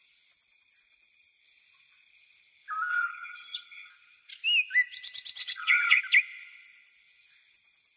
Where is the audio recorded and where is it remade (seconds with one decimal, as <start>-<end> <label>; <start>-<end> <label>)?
0.0-2.9 recorded; 2.9-3.9 remade; 3.9-5.4 recorded; 5.4-6.0 remade; 6.0-8.0 recorded